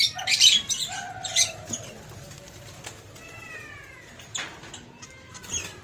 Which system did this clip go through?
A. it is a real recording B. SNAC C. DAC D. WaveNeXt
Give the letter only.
A